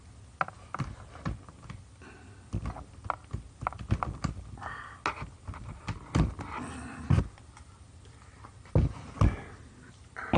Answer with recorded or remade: recorded